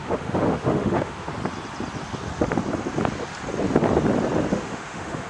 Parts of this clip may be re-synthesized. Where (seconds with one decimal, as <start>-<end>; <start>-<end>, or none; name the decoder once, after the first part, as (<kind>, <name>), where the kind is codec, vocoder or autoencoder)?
0.0-1.3 (autoencoder, DAC-VAE); 4.5-5.3